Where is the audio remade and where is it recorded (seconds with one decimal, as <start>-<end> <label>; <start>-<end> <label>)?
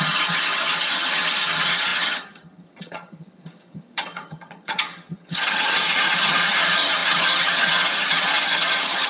0.0-9.1 remade